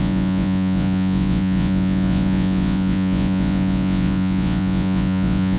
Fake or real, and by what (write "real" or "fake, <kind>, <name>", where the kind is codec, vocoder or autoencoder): fake, vocoder, Vocos